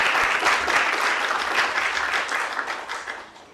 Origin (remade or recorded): recorded